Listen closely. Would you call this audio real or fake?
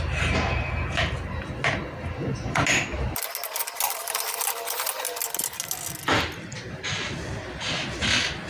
real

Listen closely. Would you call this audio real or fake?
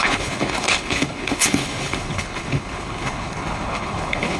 fake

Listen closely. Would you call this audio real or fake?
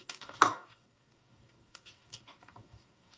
fake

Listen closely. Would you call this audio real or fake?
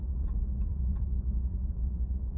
fake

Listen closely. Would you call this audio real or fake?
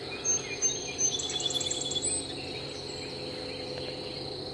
real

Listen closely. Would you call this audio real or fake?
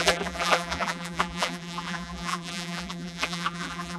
fake